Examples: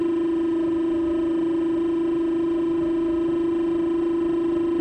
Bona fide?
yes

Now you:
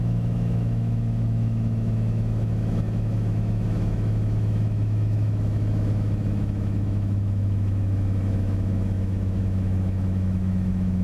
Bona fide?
no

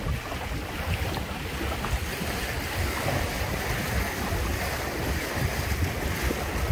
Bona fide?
yes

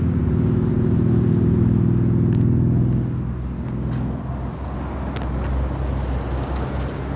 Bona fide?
yes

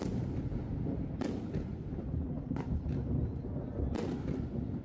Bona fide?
yes